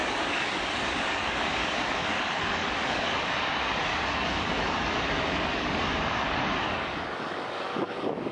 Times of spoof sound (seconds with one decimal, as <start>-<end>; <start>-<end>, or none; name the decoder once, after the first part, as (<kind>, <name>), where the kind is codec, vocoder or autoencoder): 0.0-8.3 (codec, DAC)